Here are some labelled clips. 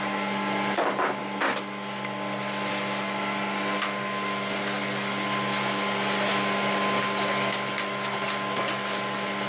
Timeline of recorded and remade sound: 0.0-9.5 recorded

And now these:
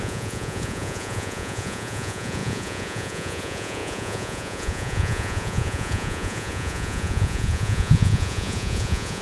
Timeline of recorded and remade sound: 0.0-9.2 remade

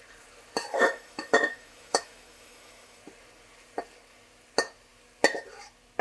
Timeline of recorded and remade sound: 0.0-0.7 recorded; 0.7-3.0 remade; 3.0-6.0 recorded

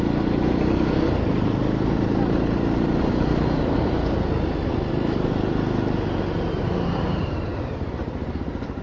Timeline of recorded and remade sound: 0.0-8.8 recorded

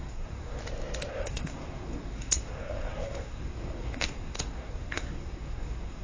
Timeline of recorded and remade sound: 0.0-0.6 remade; 0.6-1.1 recorded; 1.1-6.0 remade

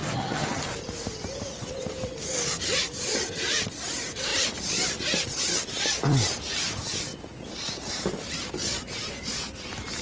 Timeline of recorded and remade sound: 0.0-0.6 remade; 0.6-10.0 recorded